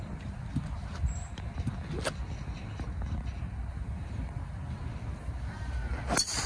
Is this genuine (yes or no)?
yes